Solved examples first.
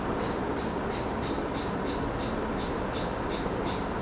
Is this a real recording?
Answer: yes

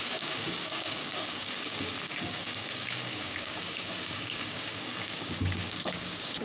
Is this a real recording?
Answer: no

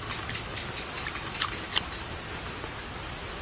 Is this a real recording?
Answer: yes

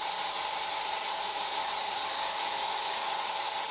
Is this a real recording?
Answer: yes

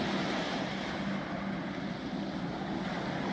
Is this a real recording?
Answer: yes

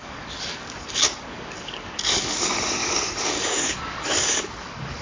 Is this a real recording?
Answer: no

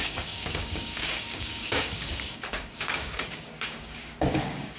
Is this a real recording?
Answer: no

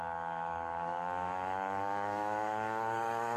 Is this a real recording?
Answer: no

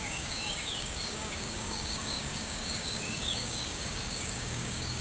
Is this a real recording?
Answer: no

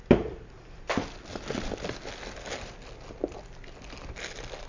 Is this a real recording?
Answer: yes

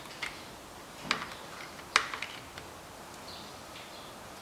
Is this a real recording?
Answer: yes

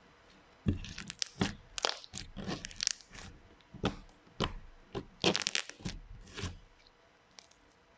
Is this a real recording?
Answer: yes